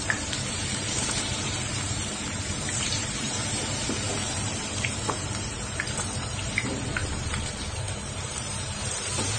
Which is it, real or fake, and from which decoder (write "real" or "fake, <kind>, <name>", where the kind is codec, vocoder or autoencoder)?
fake, vocoder, BigVGAN v2